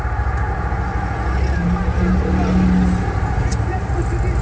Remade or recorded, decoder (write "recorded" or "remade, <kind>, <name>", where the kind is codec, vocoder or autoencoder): recorded